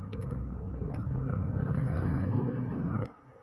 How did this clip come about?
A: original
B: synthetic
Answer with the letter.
B